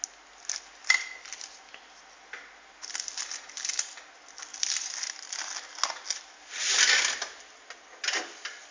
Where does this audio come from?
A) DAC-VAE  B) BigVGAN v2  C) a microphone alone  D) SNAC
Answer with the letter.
C